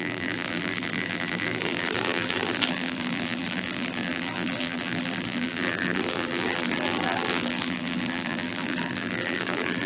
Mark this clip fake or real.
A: fake